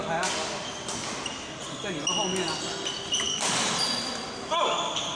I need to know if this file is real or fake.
real